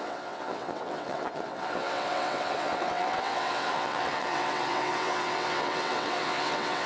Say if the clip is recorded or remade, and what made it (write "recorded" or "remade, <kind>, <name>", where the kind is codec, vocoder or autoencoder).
remade, vocoder, WaveNeXt